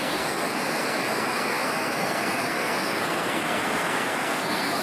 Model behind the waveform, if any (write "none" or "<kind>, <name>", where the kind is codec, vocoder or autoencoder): codec, SNAC